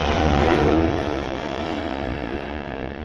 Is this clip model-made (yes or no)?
yes